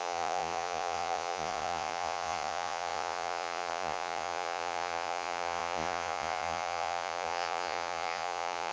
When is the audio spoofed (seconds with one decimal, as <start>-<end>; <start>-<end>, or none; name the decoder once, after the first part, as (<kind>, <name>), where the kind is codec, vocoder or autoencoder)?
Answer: 0.0-8.7 (vocoder, Vocos)